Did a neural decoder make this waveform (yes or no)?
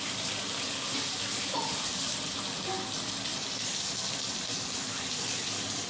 no